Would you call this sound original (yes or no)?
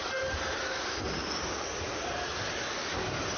yes